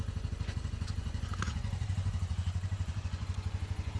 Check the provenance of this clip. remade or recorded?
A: remade